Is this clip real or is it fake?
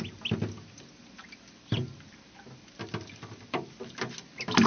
real